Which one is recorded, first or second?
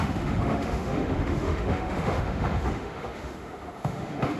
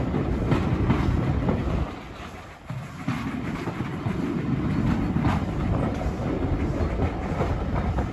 second